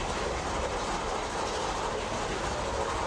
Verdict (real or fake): real